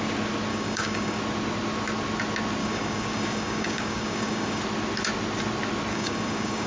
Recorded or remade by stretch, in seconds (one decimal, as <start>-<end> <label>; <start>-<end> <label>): 0.0-0.5 recorded; 0.5-1.2 remade; 1.2-2.6 recorded; 2.6-4.6 remade; 4.6-5.9 recorded; 5.9-6.7 remade